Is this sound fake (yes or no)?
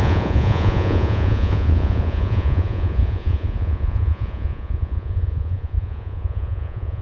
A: yes